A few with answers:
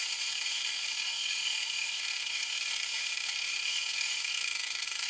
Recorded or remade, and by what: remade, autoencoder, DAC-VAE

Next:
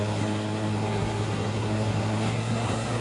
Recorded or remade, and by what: remade, codec, SNAC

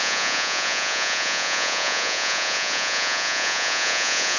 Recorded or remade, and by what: remade, vocoder, Vocos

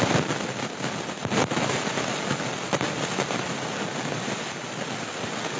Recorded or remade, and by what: recorded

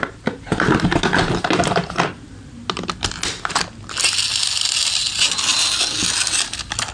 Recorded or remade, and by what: recorded